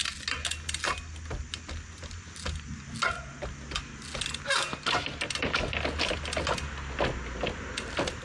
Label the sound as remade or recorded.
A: recorded